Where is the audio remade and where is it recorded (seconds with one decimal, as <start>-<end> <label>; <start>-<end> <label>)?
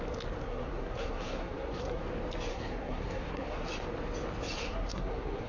0.0-0.4 recorded; 0.4-2.0 remade; 2.0-2.5 recorded; 2.5-3.7 remade; 3.7-4.6 recorded; 4.6-5.5 remade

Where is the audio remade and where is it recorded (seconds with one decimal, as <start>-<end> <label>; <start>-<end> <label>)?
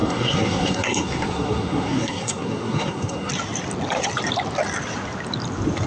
0.0-3.3 remade; 3.3-5.9 recorded